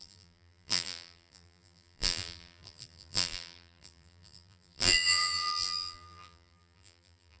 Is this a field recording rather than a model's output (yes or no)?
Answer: no